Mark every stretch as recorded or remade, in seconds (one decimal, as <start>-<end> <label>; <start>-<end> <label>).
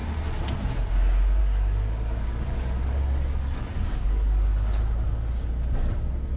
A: 0.0-1.4 recorded; 1.4-4.8 remade; 4.8-6.4 recorded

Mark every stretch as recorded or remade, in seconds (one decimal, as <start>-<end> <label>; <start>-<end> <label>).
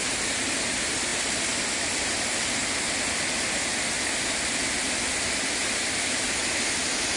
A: 0.0-7.2 recorded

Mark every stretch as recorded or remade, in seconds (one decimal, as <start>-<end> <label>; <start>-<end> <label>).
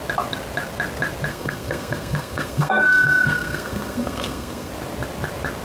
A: 0.0-1.3 recorded; 1.3-4.7 remade; 4.7-5.6 recorded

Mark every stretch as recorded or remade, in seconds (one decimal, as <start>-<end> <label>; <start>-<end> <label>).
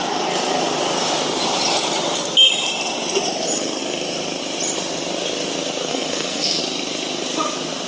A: 0.0-5.9 recorded; 5.9-6.6 remade; 6.6-7.9 recorded